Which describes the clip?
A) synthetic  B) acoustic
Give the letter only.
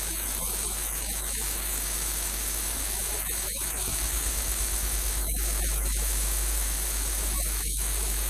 A